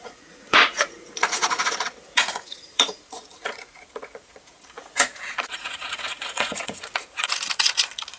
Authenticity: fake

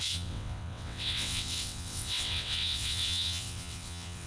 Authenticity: fake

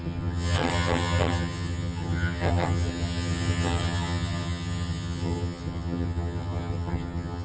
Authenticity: fake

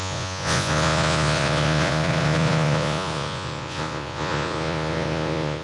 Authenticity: fake